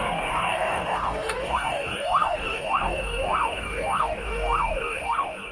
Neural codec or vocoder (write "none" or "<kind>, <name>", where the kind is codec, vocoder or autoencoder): codec, DAC